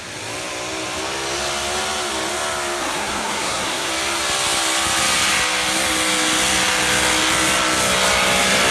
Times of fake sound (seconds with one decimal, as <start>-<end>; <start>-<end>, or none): 2.8-3.9